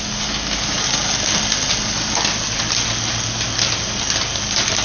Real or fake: real